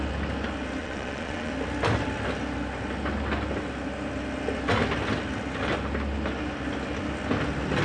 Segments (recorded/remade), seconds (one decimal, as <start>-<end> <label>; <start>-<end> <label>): 0.0-0.8 recorded; 0.8-1.5 remade; 1.5-7.8 recorded